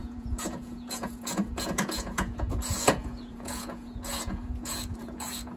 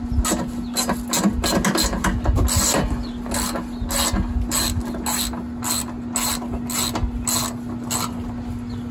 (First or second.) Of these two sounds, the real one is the second